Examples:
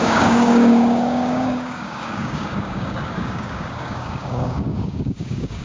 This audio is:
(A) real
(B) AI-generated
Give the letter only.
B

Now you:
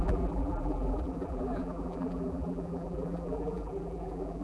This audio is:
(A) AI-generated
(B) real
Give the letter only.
A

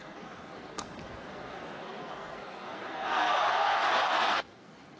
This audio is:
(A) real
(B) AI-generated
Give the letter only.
B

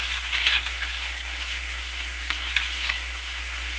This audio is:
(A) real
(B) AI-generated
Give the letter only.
B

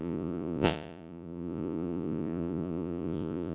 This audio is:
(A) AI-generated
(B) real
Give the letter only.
A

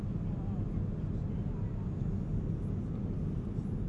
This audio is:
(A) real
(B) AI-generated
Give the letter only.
A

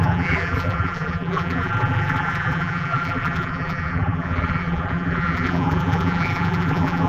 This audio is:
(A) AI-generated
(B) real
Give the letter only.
A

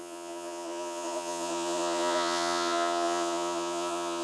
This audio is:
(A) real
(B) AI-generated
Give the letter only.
B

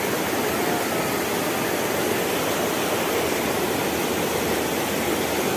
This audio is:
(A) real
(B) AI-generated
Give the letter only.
A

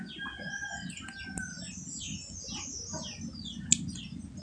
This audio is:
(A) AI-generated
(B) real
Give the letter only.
B